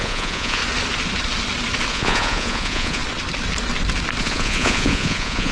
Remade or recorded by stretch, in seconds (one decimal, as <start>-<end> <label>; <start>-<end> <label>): 0.0-0.6 remade; 0.6-1.9 recorded; 1.9-3.0 remade; 3.0-4.2 recorded; 4.2-5.5 remade